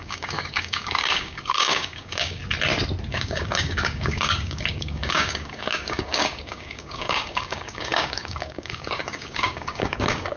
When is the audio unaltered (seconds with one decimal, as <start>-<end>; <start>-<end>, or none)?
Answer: 2.4-3.1